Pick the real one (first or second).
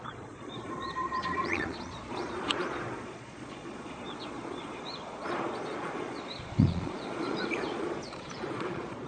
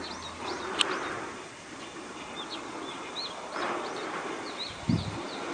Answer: second